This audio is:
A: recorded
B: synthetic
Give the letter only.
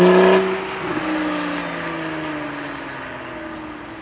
A